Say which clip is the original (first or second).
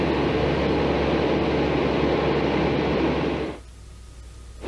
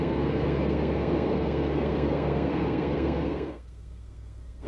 first